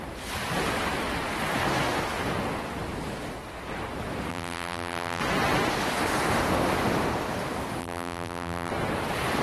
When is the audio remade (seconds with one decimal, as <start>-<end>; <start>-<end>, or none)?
4.3-5.2; 7.8-8.7